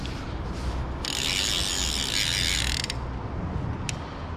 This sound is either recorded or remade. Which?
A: recorded